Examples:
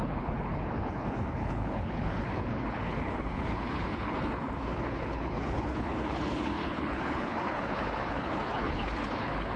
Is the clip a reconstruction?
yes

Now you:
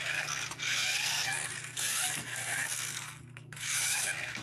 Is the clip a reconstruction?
yes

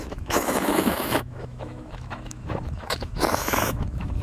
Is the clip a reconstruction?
yes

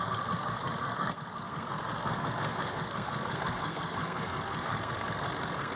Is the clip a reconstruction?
yes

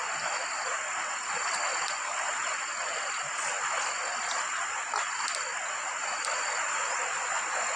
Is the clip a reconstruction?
no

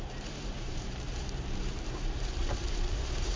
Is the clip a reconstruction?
yes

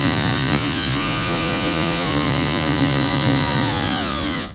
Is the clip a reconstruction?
yes